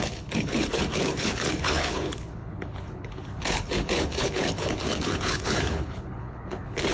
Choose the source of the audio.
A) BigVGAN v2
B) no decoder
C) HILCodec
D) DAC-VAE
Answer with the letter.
C